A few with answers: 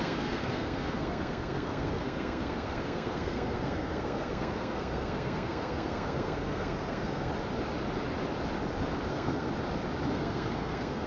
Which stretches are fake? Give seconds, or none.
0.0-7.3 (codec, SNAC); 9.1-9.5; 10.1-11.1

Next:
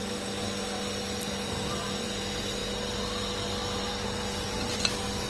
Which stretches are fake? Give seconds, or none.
none